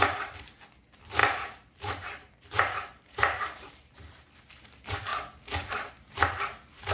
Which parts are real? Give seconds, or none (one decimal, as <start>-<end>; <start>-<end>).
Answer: 5.1-5.9

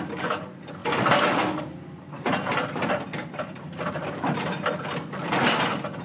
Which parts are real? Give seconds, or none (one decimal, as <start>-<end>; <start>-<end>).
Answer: 0.0-6.0

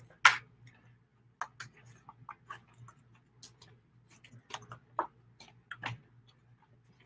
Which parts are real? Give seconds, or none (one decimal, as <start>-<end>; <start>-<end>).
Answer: 0.0-7.1